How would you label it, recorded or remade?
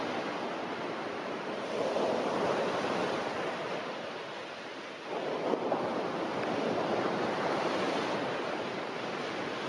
recorded